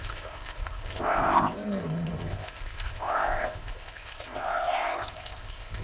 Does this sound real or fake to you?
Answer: fake